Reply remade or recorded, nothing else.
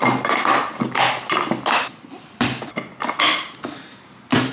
recorded